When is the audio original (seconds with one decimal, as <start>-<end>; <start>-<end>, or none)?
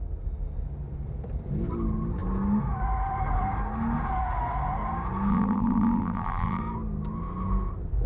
0.0-5.3; 6.6-8.1